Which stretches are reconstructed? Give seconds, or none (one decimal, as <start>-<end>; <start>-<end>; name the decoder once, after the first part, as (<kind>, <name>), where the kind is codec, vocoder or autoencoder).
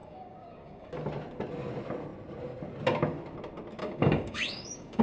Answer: 0.0-0.9 (codec, DAC); 3.8-5.0